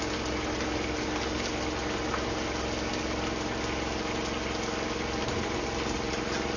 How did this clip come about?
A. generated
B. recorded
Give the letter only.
B